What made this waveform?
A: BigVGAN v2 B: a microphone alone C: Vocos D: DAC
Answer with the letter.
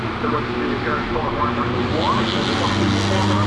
B